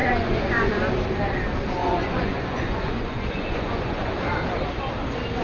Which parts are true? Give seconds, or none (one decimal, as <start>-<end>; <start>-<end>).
0.8-1.8; 4.1-5.4